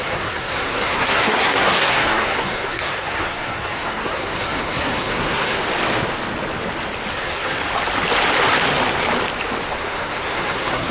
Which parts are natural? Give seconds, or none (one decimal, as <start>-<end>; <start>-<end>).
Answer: 5.6-7.1; 7.6-9.8